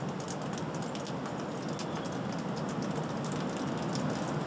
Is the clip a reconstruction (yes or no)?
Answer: no